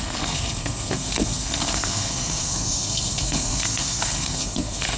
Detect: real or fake fake